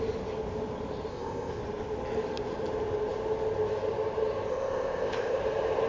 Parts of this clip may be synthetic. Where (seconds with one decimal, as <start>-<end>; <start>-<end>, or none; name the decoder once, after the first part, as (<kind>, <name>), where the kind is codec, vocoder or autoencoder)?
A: 1.1-1.6 (codec, ZipCodec); 4.5-5.4